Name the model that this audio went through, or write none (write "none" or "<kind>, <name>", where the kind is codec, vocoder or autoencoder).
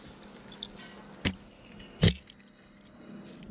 none